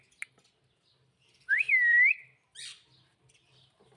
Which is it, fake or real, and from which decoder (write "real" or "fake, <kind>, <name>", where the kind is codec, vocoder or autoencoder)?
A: real